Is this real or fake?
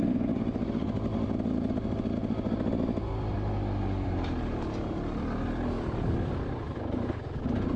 real